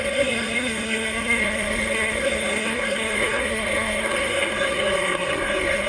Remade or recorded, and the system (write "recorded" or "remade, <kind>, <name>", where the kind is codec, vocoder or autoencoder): remade, codec, SNAC